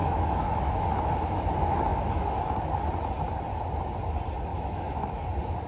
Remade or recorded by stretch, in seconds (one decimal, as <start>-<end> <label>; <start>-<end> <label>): 0.0-1.5 remade; 1.5-1.9 recorded; 1.9-2.4 remade; 2.4-4.5 recorded; 4.5-5.2 remade; 5.2-5.7 recorded